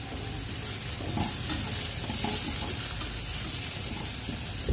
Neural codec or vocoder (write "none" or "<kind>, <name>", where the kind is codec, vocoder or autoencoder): none